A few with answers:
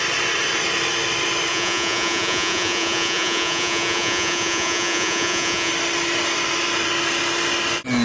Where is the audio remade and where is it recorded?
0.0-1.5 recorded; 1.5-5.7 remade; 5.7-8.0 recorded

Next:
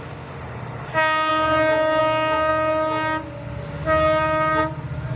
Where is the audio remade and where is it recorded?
0.0-5.2 recorded